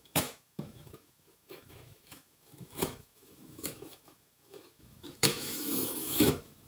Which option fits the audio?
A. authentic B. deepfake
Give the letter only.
B